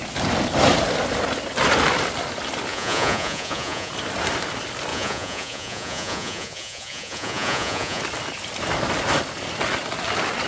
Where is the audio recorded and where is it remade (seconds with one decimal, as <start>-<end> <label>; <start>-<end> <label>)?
0.0-2.7 recorded; 2.7-3.9 remade; 3.9-4.9 recorded; 4.9-8.0 remade; 8.0-10.5 recorded

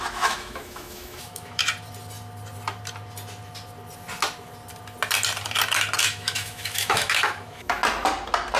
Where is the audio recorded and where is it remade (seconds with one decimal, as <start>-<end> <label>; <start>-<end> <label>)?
0.0-1.6 remade; 1.6-6.0 recorded; 6.0-7.8 remade; 7.8-8.6 recorded

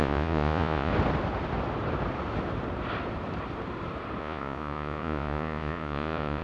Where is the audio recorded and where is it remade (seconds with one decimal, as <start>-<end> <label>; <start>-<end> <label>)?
0.0-0.9 remade; 0.9-4.2 recorded; 4.2-6.4 remade